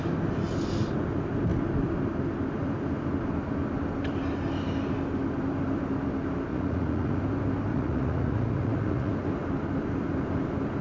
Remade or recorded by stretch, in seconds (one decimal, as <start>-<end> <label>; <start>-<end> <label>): 0.0-6.5 recorded; 6.5-7.2 remade; 7.2-7.7 recorded; 7.7-9.1 remade; 9.1-10.8 recorded